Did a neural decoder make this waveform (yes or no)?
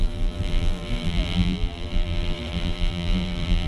yes